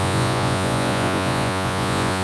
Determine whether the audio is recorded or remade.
remade